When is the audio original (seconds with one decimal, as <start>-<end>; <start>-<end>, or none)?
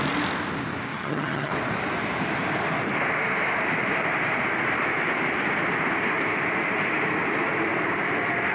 0.0-0.9; 1.5-8.5